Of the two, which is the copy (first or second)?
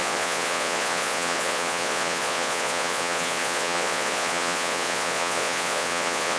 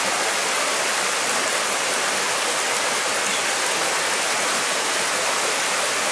first